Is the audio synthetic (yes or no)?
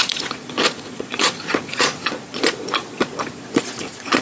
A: yes